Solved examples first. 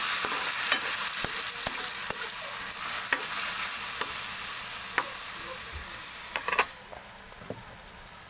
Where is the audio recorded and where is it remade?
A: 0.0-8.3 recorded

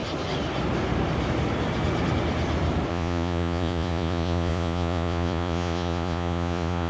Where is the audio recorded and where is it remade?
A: 0.0-2.9 recorded; 2.9-6.9 remade